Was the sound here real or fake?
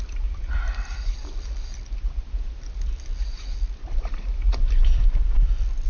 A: fake